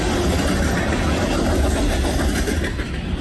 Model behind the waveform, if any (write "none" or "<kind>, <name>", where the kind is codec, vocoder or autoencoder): none